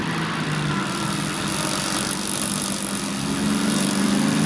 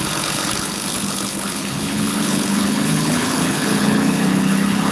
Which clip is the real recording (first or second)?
first